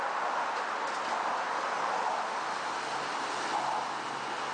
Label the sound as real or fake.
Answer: real